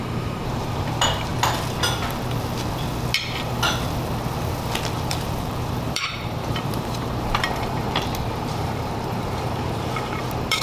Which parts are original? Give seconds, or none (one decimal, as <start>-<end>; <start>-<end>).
1.3-5.1